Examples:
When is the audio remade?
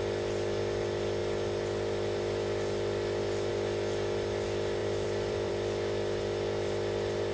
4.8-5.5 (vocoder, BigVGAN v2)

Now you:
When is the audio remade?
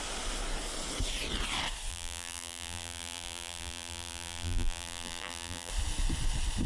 1.9-5.7 (vocoder, BigVGAN v2)